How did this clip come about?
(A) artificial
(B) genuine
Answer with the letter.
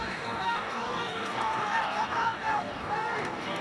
A